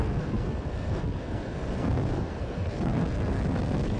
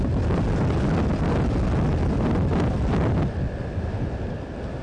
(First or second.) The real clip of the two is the second